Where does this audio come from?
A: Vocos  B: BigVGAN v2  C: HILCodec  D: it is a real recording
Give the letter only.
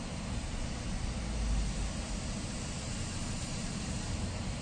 D